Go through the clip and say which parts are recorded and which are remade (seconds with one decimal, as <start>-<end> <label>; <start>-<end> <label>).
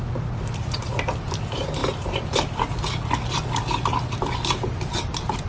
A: 0.0-5.5 recorded